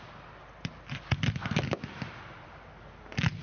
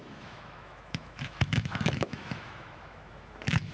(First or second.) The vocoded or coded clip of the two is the second